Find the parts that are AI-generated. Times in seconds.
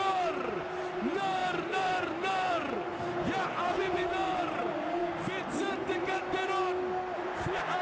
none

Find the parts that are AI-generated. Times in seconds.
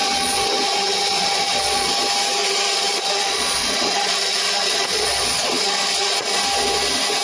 0.0-2.0; 2.4-6.4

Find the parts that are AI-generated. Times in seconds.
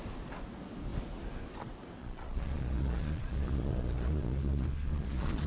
2.0-5.5